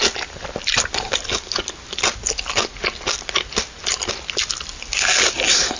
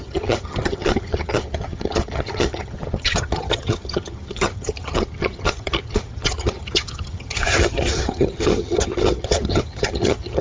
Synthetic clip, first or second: second